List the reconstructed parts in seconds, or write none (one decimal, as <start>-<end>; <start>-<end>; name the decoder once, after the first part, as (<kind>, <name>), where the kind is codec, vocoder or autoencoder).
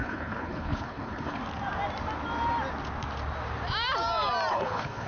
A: 0.0-1.4 (codec, HILCodec); 4.5-5.1